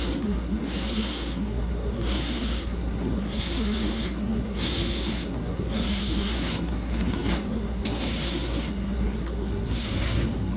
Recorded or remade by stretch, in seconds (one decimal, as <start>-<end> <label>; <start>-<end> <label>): 0.0-10.6 remade